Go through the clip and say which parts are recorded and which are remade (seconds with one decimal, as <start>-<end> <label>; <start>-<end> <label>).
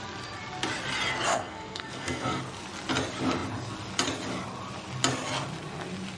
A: 0.0-1.3 recorded; 1.3-2.4 remade; 2.4-6.2 recorded